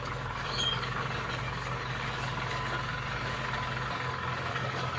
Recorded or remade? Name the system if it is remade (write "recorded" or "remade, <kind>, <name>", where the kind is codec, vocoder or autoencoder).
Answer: remade, codec, DAC